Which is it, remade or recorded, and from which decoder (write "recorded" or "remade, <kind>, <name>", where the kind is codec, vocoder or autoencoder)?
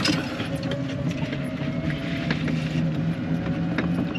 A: recorded